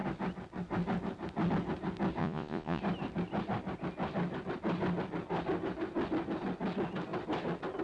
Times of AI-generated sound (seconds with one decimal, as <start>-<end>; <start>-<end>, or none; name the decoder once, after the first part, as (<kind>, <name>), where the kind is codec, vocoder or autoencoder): 2.2-2.8 (vocoder, Vocos)